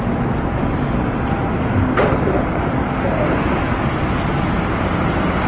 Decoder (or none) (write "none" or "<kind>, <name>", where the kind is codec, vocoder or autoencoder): none